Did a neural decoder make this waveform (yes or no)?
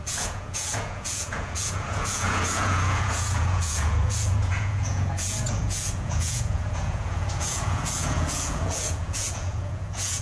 yes